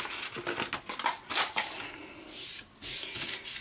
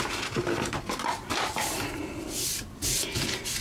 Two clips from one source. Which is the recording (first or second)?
first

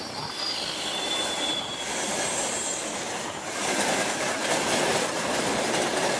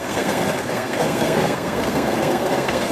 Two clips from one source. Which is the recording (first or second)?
first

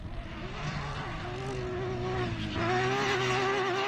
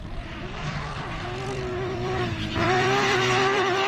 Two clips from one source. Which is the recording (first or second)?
first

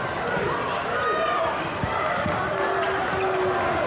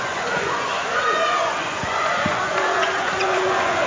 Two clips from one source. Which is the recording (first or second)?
first